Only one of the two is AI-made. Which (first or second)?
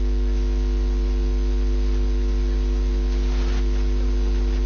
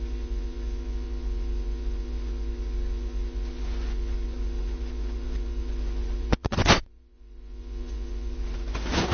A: second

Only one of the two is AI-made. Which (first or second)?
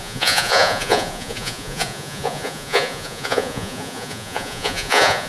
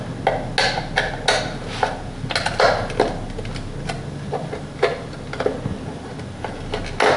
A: first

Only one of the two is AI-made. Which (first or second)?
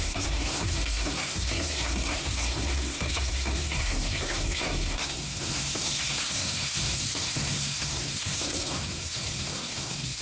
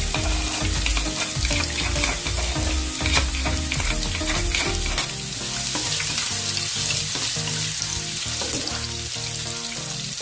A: first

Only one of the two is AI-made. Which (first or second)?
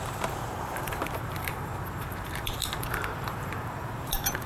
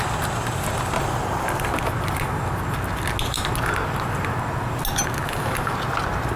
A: first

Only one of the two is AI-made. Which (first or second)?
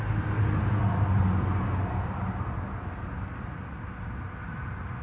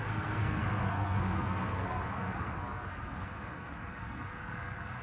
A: second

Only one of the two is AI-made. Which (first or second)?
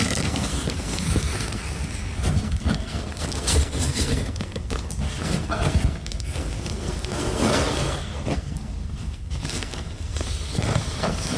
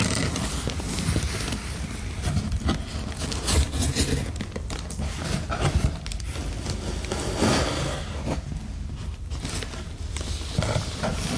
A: first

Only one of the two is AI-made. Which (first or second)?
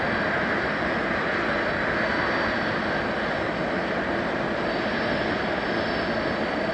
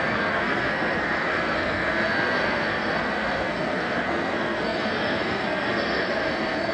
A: second